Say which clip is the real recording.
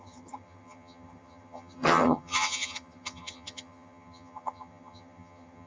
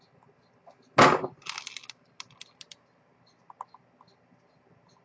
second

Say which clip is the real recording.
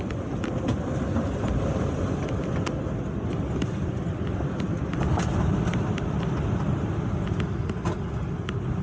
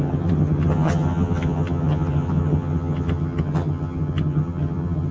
first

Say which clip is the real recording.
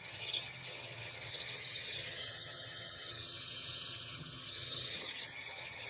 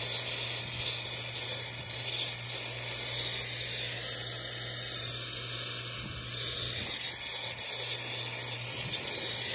second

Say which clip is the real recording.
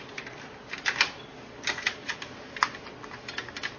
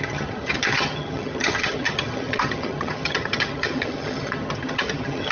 first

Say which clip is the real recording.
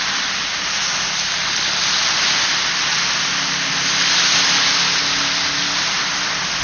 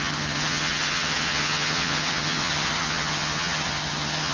first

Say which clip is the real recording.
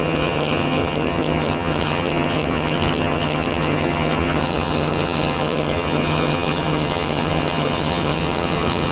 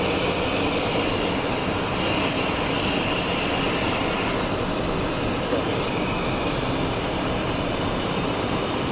second